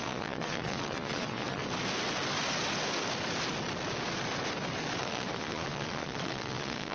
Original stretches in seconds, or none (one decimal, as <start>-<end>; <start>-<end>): 1.6-5.0

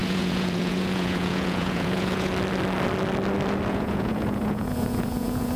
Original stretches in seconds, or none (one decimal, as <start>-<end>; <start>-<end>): 2.3-3.7

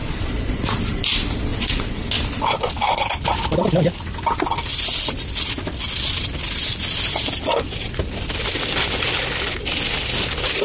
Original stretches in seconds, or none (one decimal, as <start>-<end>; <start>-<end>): 0.8-1.5; 2.1-10.6

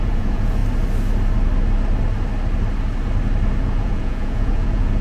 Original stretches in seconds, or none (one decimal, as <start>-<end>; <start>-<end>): 0.6-3.6

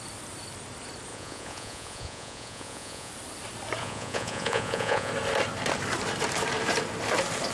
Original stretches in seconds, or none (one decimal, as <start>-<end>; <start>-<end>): 0.0-1.1; 3.1-3.8; 5.1-7.5